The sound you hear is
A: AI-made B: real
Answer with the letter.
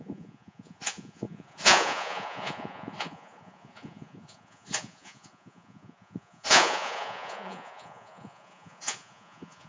A